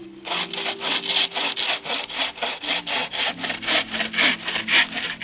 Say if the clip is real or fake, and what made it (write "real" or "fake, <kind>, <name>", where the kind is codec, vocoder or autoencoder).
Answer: real